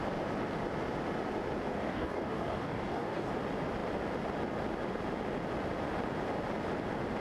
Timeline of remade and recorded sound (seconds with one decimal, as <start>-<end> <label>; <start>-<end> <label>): 0.0-1.7 recorded; 1.7-3.3 remade; 3.3-7.2 recorded